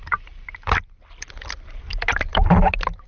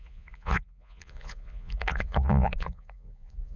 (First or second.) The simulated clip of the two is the second